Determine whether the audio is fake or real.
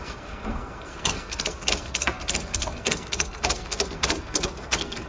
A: fake